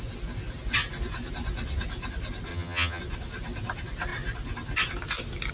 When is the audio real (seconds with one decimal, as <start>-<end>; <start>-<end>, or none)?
0.0-2.5; 3.0-5.5